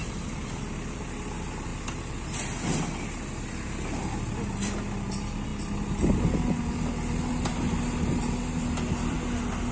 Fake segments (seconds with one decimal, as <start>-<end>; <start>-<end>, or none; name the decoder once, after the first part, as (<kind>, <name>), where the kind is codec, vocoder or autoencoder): none